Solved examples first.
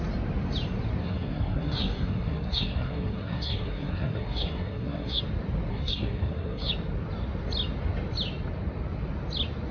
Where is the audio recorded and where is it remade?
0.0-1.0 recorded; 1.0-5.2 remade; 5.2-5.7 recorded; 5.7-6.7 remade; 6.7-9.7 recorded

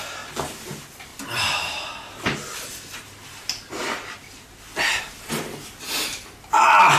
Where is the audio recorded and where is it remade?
0.0-1.1 recorded; 1.1-5.3 remade; 5.3-7.0 recorded